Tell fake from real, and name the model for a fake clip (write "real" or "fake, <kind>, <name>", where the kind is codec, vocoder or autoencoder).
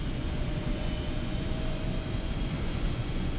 fake, vocoder, Vocos